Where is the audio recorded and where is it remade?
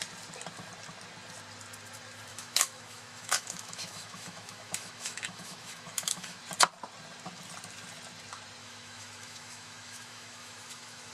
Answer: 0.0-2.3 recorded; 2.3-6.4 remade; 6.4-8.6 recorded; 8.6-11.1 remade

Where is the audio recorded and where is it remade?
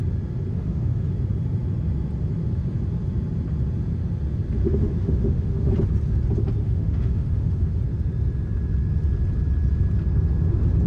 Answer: 0.0-0.5 recorded; 0.5-1.1 remade; 1.1-4.6 recorded; 4.6-5.7 remade; 5.7-6.6 recorded; 6.6-7.8 remade; 7.8-10.9 recorded